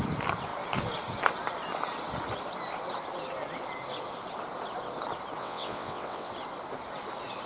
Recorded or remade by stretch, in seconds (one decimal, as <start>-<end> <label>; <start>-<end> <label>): 0.0-5.4 recorded; 5.4-6.3 remade; 6.3-7.5 recorded